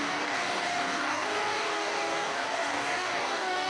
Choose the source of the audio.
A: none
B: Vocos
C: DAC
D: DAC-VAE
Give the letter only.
C